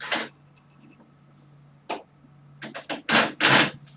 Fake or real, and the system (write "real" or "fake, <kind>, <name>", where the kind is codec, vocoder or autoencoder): real